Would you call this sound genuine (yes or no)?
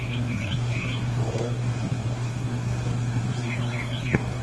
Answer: no